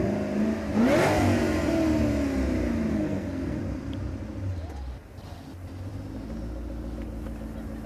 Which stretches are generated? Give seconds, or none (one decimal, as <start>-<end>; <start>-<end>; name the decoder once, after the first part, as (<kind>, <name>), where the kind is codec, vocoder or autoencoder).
2.9-3.6 (codec, SNAC)